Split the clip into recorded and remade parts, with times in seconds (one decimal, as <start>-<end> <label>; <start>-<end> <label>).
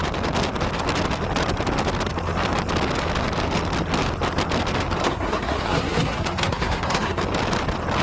0.0-5.0 recorded; 5.0-7.2 remade; 7.2-8.0 recorded